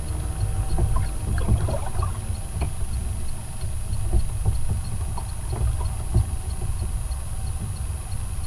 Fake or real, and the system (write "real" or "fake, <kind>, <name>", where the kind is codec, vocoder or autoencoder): real